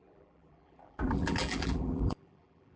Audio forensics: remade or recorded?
remade